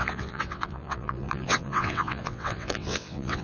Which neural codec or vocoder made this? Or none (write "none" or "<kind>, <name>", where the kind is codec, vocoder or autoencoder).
vocoder, WaveNeXt